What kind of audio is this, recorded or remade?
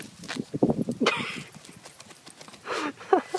recorded